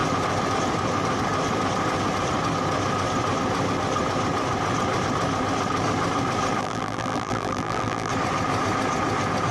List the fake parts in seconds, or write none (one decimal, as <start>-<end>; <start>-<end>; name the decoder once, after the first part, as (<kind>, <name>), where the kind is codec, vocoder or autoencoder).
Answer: 6.6-8.1 (vocoder, BigVGAN v2)